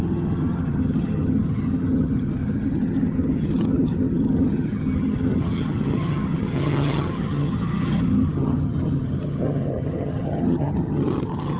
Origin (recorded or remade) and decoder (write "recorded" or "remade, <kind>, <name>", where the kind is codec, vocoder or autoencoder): remade, vocoder, HiFi-GAN